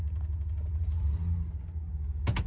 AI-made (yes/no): no